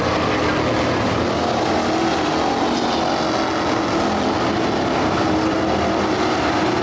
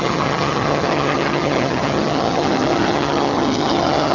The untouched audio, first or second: first